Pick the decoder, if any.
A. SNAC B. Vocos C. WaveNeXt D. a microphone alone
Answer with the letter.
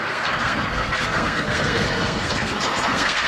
A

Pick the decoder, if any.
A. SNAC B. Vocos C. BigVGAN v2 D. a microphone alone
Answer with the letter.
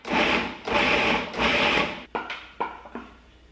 D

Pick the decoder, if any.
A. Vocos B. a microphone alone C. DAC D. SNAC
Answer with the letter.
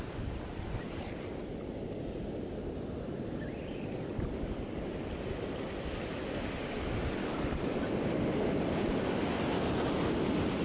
B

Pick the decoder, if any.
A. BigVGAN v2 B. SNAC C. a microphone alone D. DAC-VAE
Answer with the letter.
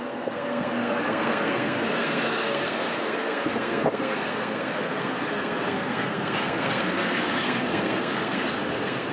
B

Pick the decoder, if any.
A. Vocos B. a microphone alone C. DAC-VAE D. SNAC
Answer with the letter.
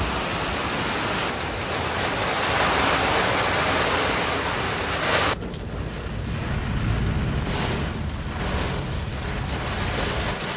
B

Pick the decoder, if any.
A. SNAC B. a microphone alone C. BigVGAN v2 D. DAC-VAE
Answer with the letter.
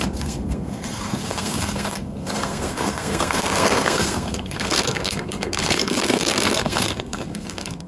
A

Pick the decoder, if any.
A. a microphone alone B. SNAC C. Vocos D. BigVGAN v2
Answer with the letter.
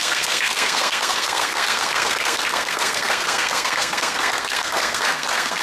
B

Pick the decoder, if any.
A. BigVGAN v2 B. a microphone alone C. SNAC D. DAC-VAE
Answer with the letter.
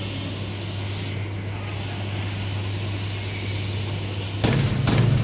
B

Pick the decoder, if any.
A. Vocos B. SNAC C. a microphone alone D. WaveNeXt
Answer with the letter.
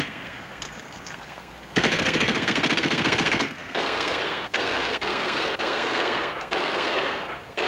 B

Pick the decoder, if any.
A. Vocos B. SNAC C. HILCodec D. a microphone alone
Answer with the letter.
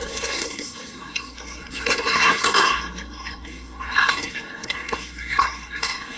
B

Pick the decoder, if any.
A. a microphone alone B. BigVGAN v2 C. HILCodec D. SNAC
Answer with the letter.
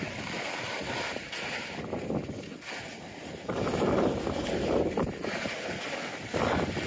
A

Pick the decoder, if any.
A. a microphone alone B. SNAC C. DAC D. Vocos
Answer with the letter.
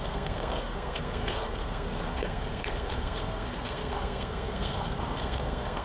B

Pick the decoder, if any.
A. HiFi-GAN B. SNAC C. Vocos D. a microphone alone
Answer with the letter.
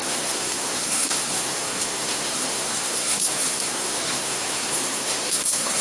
B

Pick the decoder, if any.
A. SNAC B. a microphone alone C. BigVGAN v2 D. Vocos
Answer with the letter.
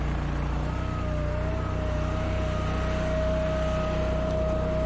B